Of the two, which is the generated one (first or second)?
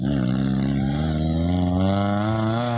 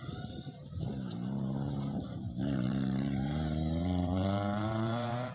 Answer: second